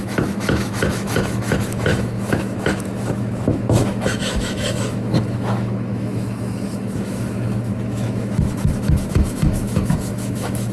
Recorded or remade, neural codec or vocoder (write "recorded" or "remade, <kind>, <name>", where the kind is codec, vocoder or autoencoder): remade, autoencoder, DAC-VAE